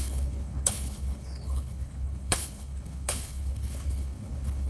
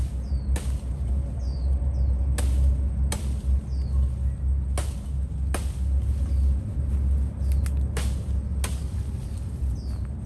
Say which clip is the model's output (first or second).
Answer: first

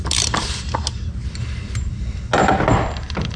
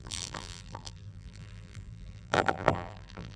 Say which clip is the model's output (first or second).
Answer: second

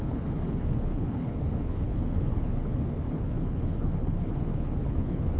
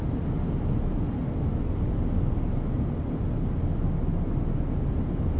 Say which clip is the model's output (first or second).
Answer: first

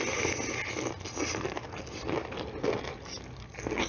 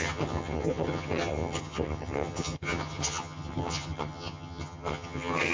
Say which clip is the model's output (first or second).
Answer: second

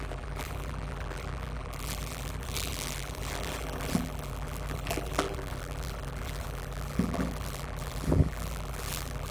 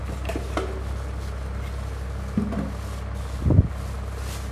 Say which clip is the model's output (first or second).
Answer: first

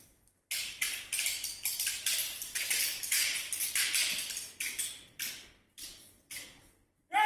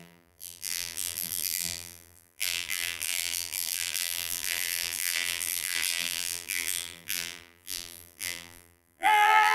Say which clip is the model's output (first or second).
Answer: second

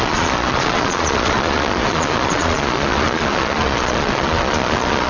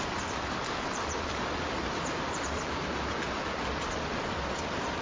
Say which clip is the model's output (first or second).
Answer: first